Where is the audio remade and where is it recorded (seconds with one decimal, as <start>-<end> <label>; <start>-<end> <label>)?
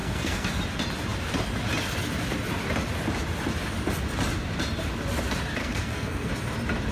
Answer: 0.0-0.6 remade; 0.6-5.6 recorded; 5.6-6.3 remade; 6.3-6.9 recorded